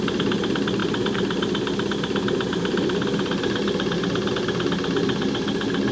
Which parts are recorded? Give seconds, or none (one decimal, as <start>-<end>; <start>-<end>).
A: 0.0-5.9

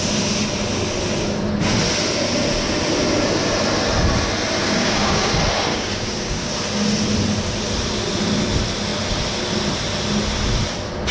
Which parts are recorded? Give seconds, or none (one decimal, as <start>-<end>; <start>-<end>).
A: 0.0-4.6; 5.3-5.7; 6.5-11.1

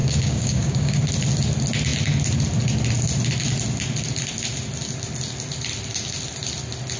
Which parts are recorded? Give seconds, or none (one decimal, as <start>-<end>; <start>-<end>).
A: 1.0-7.0

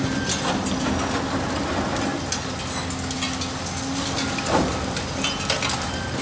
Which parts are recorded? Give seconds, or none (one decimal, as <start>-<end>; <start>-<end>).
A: 0.0-6.2

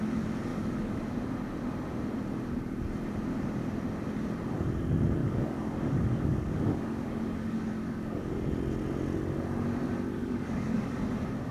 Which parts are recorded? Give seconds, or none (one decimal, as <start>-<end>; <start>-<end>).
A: 0.0-0.5; 1.0-5.2; 8.2-10.2; 11.0-11.5

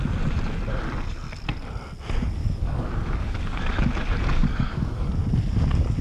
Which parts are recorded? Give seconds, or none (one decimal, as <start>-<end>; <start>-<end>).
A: 0.0-2.4; 3.7-4.4; 5.1-6.0